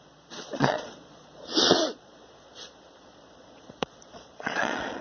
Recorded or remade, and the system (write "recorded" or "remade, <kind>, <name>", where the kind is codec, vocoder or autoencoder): remade, vocoder, Vocos